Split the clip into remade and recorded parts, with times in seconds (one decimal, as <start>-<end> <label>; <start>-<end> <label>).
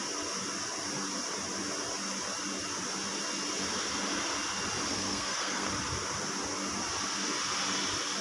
0.0-4.9 recorded; 4.9-5.7 remade; 5.7-8.2 recorded